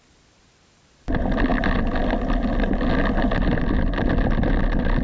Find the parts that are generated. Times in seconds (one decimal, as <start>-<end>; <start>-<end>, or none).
none